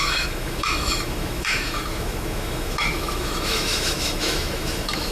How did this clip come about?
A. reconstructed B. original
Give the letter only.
A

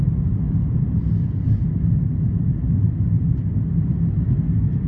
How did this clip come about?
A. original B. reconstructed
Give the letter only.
A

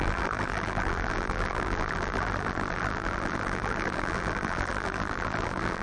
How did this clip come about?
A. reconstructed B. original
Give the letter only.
A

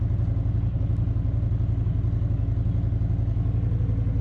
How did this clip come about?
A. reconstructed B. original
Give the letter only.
B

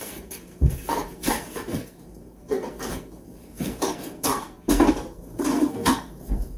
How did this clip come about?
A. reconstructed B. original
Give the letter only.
A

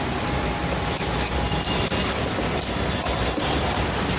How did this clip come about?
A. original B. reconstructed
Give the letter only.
A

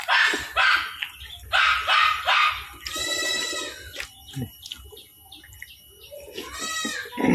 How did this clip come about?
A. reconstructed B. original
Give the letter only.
B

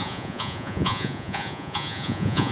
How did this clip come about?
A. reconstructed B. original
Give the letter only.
A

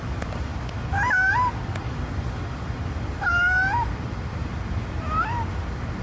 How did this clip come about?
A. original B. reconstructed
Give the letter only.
A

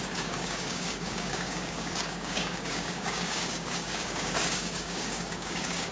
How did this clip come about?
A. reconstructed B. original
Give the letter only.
A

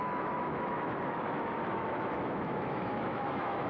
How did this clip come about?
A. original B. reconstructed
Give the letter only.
B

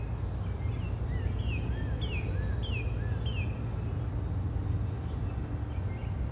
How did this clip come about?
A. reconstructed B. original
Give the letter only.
B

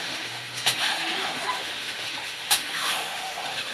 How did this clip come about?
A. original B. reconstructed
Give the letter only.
B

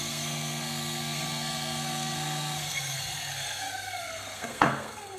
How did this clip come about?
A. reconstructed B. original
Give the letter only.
A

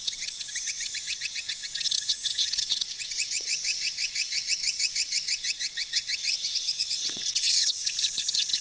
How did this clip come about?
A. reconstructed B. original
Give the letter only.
A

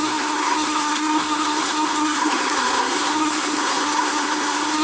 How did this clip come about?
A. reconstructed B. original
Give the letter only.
A